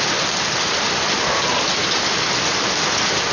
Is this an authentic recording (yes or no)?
yes